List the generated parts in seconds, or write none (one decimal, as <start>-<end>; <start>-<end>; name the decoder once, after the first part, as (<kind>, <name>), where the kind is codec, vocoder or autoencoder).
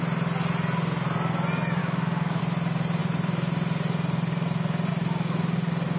1.8-2.4 (codec, DAC)